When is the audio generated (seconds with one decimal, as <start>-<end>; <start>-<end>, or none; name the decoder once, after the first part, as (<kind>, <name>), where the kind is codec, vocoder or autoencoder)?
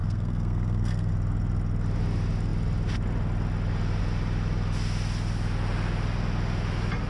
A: 0.0-1.1 (codec, SNAC)